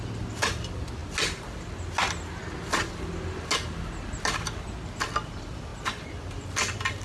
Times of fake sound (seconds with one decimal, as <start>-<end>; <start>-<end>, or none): none